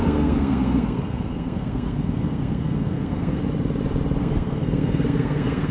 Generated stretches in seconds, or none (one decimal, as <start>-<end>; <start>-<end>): 0.0-3.4; 4.2-5.7